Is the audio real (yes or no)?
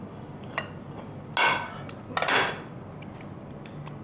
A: yes